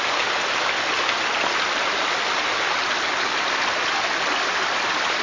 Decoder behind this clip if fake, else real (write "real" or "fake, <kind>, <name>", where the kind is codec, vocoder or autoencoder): real